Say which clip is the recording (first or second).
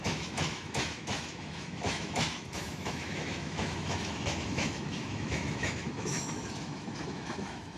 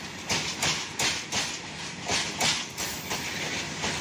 second